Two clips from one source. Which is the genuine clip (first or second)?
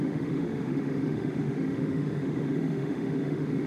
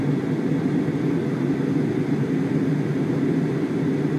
second